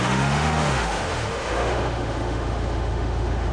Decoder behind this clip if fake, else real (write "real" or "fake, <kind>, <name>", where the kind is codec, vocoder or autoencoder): fake, autoencoder, DAC-VAE